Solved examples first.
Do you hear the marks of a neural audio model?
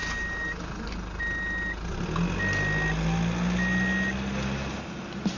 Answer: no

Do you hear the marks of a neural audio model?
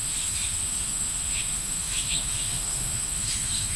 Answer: yes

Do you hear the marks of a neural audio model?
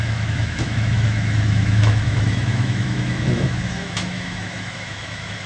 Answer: yes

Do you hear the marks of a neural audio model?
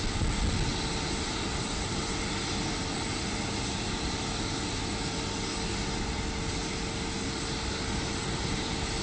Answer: no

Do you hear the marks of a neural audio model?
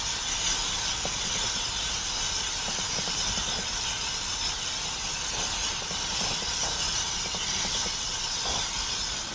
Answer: no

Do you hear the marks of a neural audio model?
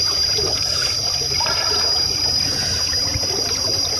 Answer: yes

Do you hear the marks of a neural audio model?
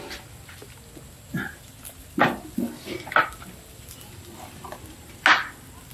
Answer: no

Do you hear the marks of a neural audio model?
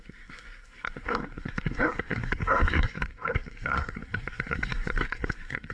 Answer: yes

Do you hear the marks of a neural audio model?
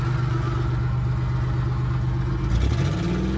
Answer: no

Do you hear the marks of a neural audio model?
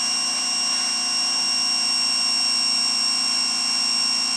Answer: no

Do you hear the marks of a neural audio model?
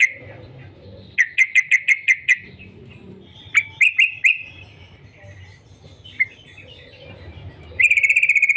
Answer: no